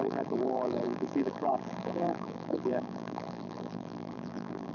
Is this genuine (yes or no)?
no